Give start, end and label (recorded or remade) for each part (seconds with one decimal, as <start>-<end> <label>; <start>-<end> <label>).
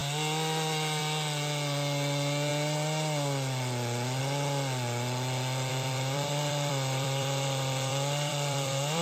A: 0.0-5.7 recorded; 5.7-9.0 remade